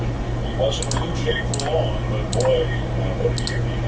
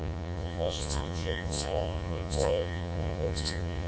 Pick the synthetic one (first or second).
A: second